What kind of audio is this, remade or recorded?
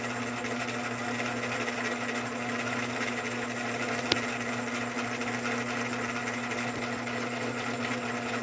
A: recorded